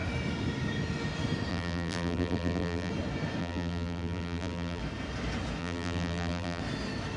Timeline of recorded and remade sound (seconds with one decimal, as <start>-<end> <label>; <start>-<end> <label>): 0.0-1.5 recorded; 1.5-2.9 remade; 2.9-3.4 recorded; 3.4-4.8 remade; 4.8-5.6 recorded; 5.6-6.6 remade; 6.6-7.2 recorded